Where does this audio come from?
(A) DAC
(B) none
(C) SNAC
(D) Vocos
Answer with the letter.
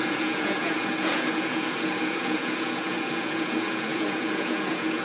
D